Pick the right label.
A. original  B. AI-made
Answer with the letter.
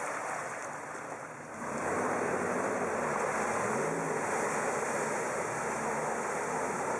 A